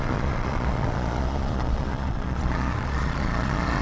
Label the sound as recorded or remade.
remade